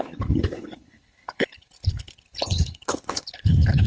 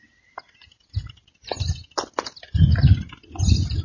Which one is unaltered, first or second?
second